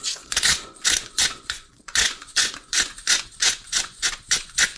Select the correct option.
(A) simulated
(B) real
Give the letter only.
A